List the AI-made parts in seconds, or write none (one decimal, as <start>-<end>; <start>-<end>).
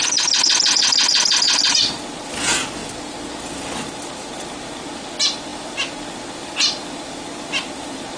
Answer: none